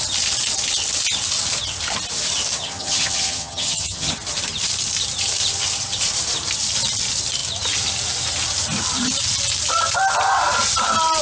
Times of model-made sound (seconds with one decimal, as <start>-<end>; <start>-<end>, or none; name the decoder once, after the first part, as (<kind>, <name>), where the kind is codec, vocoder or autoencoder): 2.6-4.1 (vocoder, HiFi-GAN)